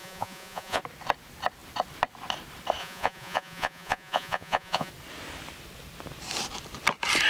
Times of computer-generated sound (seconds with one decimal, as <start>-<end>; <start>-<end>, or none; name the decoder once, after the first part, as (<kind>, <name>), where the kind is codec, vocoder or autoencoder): 0.0-0.8 (vocoder, Vocos); 2.8-4.9